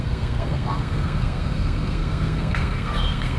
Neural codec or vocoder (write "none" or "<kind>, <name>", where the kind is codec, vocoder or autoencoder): codec, SNAC